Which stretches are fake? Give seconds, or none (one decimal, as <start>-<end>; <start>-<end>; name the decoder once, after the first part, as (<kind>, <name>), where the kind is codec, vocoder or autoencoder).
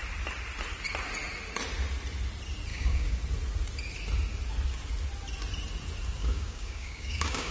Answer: 2.7-3.2 (codec, DAC); 6.2-7.5